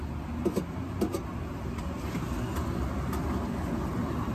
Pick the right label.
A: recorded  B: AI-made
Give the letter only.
A